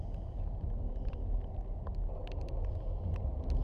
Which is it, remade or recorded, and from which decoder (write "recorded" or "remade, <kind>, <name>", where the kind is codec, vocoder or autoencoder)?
recorded